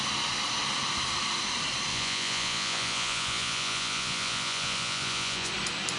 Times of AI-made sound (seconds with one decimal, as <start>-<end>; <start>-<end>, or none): 1.9-5.5